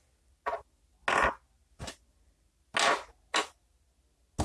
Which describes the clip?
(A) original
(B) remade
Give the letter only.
A